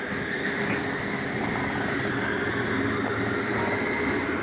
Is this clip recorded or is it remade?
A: recorded